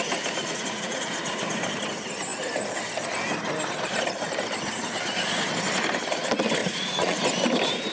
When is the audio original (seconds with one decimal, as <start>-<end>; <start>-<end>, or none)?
0.0-0.4; 1.4-6.6; 7.2-7.9